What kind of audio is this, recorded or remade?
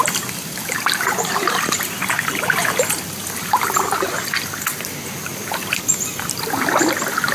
recorded